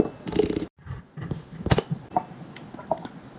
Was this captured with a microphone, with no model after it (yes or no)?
yes